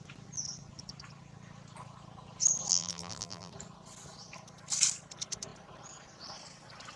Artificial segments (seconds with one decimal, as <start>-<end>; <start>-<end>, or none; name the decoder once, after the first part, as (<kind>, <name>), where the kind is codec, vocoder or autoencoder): 2.7-3.5 (vocoder, BigVGAN v2)